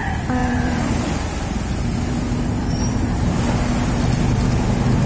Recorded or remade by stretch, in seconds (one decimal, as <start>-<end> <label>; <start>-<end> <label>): 0.0-0.4 recorded; 0.4-1.0 remade; 1.0-2.6 recorded; 2.6-3.5 remade; 3.5-5.1 recorded